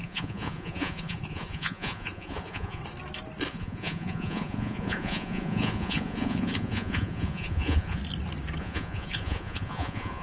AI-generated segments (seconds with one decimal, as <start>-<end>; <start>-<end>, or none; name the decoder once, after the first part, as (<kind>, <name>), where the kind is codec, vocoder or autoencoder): 0.0-2.8 (vocoder, Vocos); 3.5-8.0; 8.6-10.2